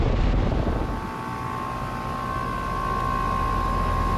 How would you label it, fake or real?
real